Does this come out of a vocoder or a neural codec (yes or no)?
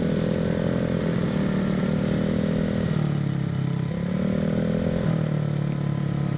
no